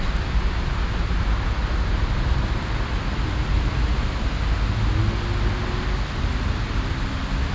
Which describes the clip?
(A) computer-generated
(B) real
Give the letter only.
B